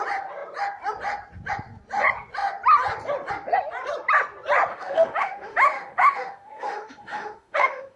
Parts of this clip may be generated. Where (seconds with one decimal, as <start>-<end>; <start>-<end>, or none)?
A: 4.7-8.0